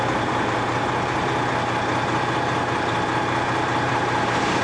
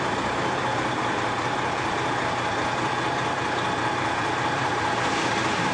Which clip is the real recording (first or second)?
first